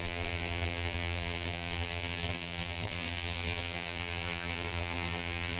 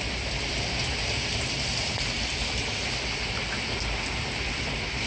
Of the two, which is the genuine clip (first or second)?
second